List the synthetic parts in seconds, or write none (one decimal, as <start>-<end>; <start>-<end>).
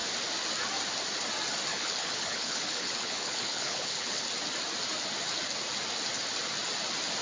1.7-4.3